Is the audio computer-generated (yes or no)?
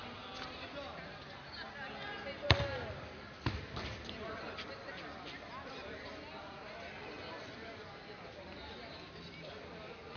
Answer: no